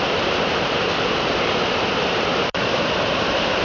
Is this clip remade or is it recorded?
remade